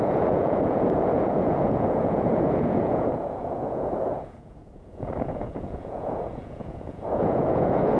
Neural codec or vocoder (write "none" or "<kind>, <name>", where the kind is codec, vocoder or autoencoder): vocoder, Vocos